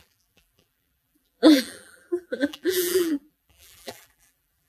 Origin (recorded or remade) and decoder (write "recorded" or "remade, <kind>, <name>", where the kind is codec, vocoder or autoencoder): remade, vocoder, BigVGAN v2